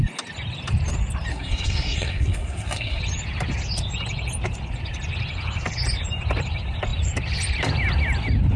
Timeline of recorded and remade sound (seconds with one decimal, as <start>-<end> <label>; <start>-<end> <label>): 0.0-1.3 recorded; 1.3-3.0 remade; 3.0-8.6 recorded